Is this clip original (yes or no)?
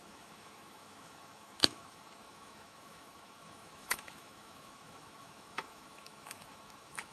no